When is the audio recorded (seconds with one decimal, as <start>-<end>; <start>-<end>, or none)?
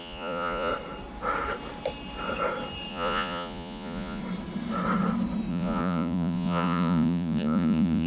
0.7-2.9; 4.2-5.5